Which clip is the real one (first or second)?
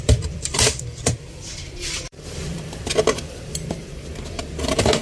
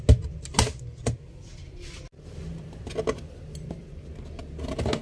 second